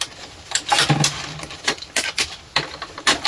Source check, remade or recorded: recorded